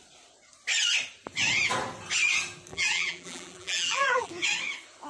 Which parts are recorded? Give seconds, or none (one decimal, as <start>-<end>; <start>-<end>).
0.0-2.7; 4.3-5.1